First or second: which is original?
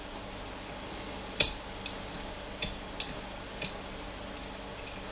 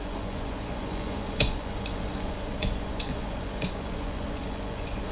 first